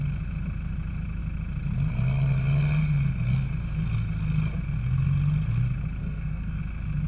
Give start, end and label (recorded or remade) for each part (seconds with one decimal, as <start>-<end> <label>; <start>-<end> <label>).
0.0-6.0 recorded; 6.0-6.6 remade; 6.6-7.1 recorded